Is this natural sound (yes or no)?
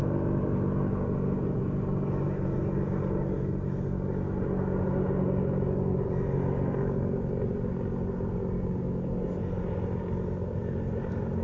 yes